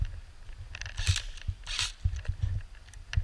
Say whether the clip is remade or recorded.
recorded